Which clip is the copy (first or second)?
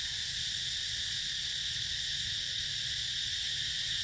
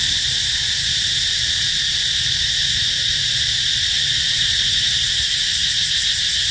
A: second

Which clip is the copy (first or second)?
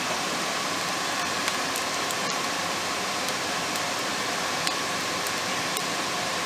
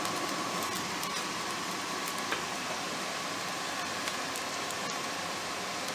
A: first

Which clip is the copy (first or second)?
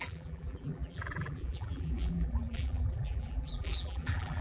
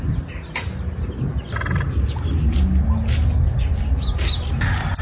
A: first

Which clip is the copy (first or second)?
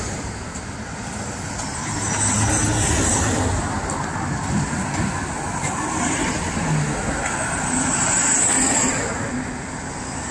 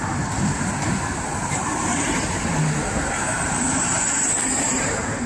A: second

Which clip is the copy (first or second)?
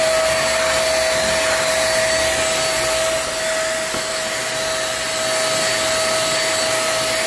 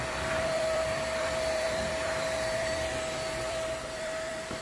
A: second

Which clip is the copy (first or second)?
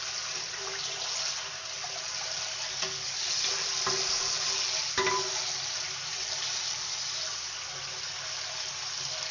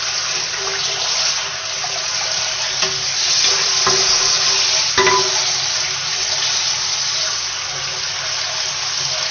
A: first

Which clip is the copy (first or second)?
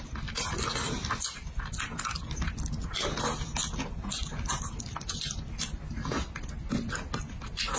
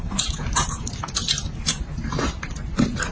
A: second